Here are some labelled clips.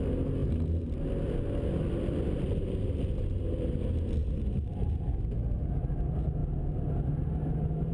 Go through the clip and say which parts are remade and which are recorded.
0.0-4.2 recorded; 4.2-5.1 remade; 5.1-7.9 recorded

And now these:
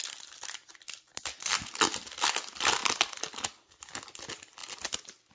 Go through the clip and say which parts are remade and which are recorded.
0.0-2.8 recorded; 2.8-3.8 remade; 3.8-5.3 recorded

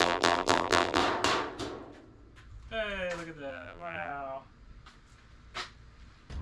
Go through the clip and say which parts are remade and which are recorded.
0.0-1.0 remade; 1.0-3.5 recorded; 3.5-4.1 remade; 4.1-6.4 recorded

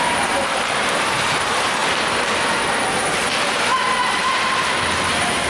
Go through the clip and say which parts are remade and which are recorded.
0.0-1.8 remade; 1.8-5.1 recorded; 5.1-5.5 remade

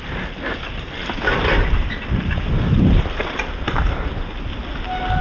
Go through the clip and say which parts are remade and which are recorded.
0.0-1.0 recorded; 1.0-4.1 remade; 4.1-5.2 recorded

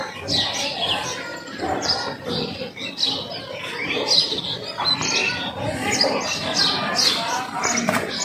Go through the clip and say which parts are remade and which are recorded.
0.0-1.3 recorded; 1.3-2.9 remade; 2.9-5.2 recorded; 5.2-6.8 remade; 6.8-8.2 recorded